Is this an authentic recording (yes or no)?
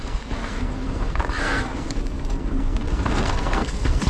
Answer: no